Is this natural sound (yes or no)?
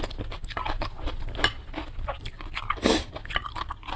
yes